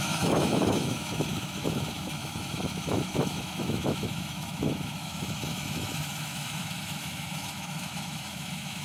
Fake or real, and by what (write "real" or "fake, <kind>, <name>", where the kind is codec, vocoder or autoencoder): fake, autoencoder, DAC-VAE